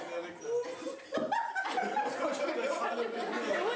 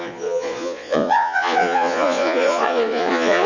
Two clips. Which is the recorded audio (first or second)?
first